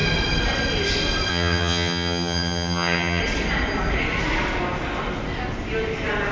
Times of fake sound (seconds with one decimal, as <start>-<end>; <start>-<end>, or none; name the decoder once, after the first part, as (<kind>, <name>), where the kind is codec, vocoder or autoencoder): 1.3-3.2 (vocoder, HiFi-GAN)